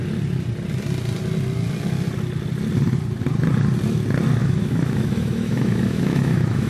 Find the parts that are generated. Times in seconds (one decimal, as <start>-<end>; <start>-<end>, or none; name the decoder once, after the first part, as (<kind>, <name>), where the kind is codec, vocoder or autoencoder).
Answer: 4.4-6.7 (autoencoder, DAC-VAE)